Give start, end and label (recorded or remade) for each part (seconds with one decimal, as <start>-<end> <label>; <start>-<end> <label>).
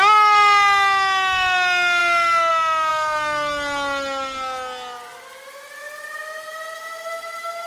0.0-7.7 recorded